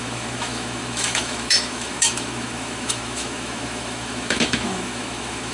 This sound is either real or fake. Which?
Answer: fake